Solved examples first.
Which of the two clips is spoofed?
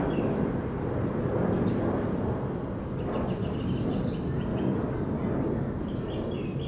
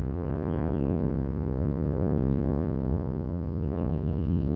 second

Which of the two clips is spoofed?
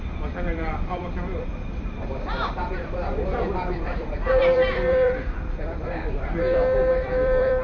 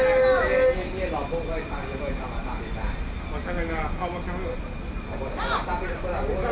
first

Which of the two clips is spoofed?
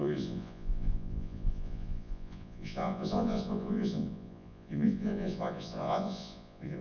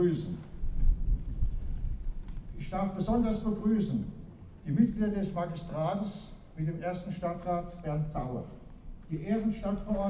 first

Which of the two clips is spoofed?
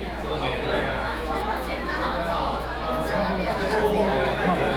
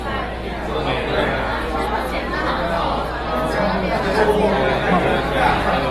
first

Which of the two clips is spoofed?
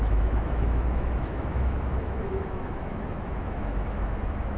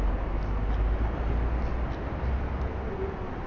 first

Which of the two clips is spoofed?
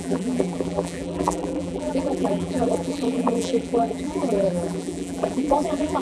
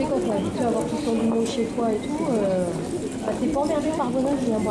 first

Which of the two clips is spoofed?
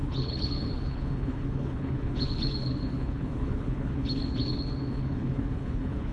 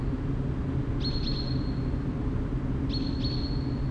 first